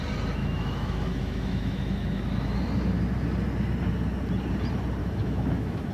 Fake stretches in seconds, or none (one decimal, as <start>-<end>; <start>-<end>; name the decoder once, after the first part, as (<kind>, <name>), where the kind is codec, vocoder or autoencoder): 0.4-2.6 (autoencoder, DAC-VAE); 5.0-5.9